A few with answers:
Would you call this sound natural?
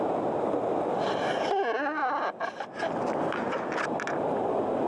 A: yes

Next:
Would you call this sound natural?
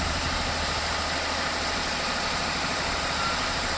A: yes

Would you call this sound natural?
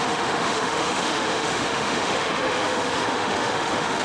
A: no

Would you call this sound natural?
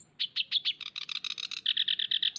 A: yes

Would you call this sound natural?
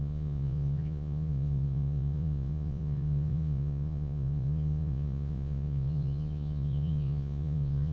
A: no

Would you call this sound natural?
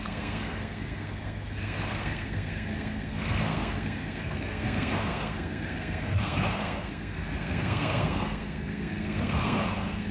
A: no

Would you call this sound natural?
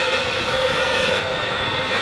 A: no